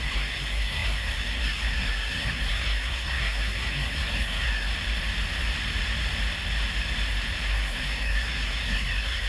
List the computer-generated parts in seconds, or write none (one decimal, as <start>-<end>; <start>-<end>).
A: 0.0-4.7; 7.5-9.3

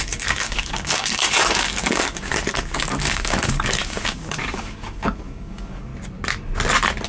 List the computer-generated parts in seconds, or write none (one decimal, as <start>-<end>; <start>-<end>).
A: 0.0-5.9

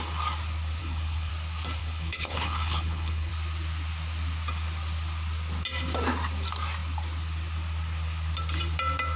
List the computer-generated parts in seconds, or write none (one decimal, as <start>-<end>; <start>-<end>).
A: 0.8-1.3; 1.8-3.3